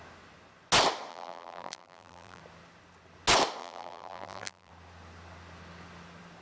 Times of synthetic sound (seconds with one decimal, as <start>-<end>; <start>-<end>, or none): 1.1-2.4; 3.6-4.7